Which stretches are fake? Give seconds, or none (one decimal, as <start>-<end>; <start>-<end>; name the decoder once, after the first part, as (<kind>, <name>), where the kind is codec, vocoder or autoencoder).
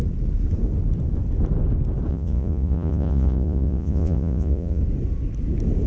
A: 2.1-4.8 (vocoder, Vocos)